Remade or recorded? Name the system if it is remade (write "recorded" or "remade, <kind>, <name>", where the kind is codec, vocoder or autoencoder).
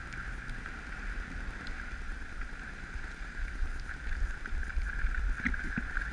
recorded